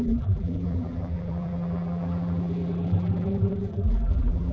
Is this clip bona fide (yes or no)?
no